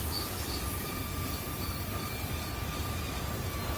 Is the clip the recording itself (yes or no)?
yes